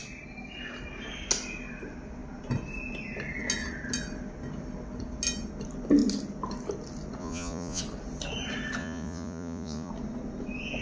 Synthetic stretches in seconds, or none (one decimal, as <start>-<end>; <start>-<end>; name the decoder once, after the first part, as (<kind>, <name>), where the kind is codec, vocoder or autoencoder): 7.2-7.8 (vocoder, Vocos); 8.8-9.9